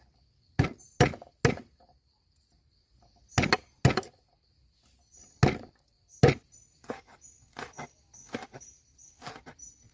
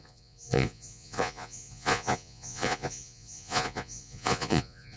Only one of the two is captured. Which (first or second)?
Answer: first